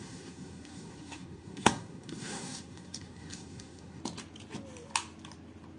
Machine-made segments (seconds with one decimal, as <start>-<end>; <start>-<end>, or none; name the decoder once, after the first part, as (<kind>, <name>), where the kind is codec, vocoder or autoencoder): 0.0-4.0 (codec, SNAC)